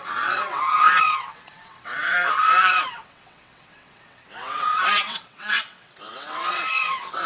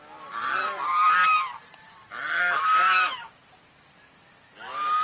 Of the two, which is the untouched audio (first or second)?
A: second